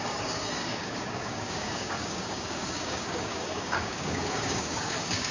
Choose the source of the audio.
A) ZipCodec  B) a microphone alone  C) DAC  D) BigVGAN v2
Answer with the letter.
C